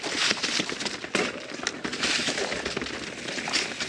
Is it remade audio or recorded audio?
recorded